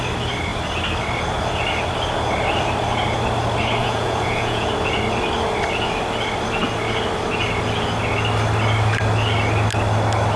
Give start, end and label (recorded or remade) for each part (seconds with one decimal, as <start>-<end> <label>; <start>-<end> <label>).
0.0-3.8 recorded; 3.8-4.6 remade; 4.6-10.4 recorded